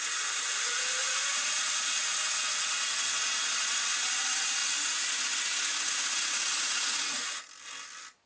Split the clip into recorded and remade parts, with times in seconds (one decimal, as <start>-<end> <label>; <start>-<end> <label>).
0.0-1.0 recorded; 1.0-3.0 remade; 3.0-4.6 recorded; 4.6-5.4 remade; 5.4-6.1 recorded; 6.1-7.4 remade; 7.4-8.3 recorded